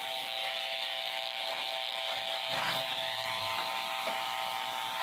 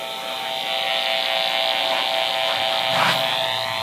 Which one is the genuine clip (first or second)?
second